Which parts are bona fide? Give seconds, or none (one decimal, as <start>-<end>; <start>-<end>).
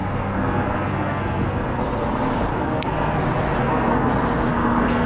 1.8-2.5; 3.2-3.6; 4.1-4.5